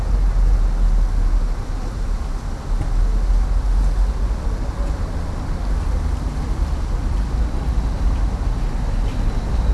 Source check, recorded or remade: recorded